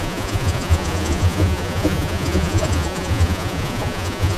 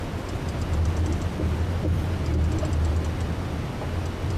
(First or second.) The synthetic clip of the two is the first